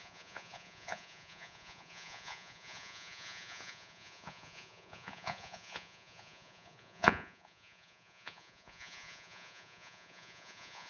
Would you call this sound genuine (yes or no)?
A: no